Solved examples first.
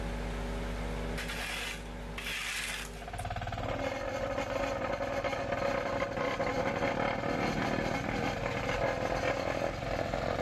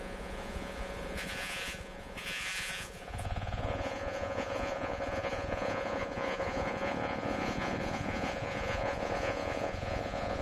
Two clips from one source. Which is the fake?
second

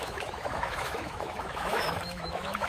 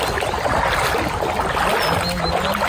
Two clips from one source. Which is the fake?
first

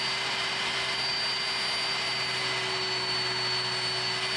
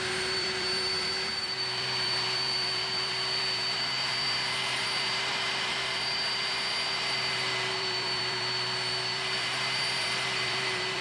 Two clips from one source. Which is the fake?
second